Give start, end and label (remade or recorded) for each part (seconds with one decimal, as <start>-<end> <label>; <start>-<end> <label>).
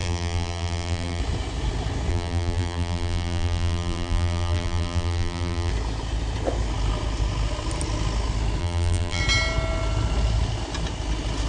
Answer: 0.0-1.2 remade; 1.2-2.1 recorded; 2.1-5.7 remade; 5.7-8.6 recorded; 8.6-9.2 remade; 9.2-11.5 recorded